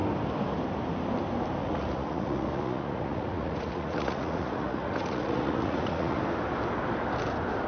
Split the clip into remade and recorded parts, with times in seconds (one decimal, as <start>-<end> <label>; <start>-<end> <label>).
0.0-1.6 recorded; 1.6-6.2 remade; 6.2-7.7 recorded

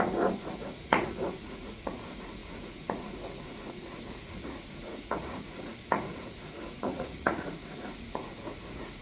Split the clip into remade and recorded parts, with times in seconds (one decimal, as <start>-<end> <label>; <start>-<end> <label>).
0.0-9.0 remade

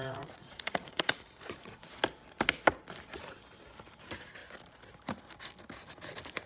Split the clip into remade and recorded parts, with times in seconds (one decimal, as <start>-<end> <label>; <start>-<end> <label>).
0.0-1.8 remade; 1.8-6.5 recorded

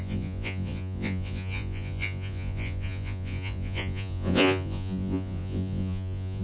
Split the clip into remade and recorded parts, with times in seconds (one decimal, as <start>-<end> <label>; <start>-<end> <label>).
0.0-6.4 remade